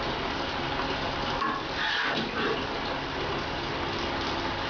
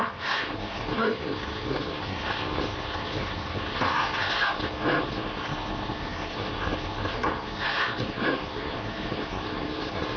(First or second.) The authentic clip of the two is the first